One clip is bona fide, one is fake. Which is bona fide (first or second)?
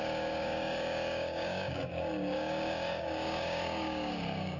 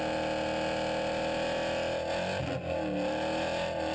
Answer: second